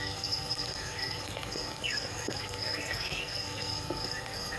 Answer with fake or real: fake